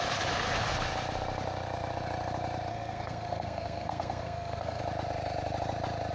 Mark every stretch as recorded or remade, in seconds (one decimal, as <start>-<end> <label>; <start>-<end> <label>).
0.0-2.7 recorded; 2.7-4.8 remade; 4.8-6.1 recorded